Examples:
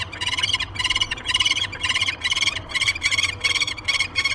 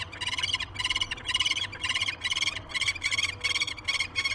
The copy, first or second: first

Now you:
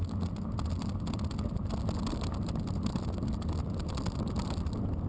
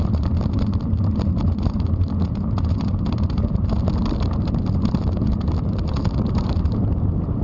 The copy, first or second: second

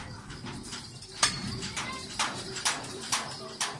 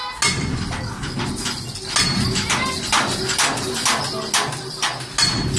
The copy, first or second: first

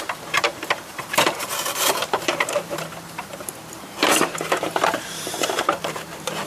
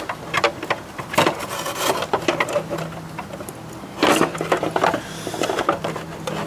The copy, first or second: first